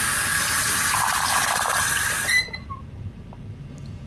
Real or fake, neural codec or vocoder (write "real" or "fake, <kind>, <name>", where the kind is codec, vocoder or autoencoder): fake, vocoder, BigVGAN v2